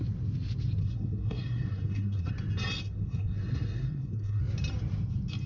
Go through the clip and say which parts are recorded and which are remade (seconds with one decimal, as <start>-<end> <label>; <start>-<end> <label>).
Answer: 0.0-0.8 recorded; 0.8-2.3 remade; 2.3-2.8 recorded; 2.8-4.4 remade; 4.4-5.5 recorded